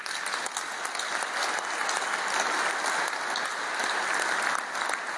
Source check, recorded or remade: recorded